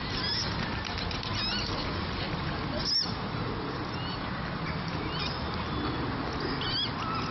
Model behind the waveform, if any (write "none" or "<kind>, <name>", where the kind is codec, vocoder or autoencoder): none